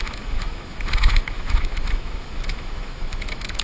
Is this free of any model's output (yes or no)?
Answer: no